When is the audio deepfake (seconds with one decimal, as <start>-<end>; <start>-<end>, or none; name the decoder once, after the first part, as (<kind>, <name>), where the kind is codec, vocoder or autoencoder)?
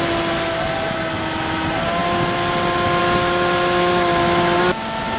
none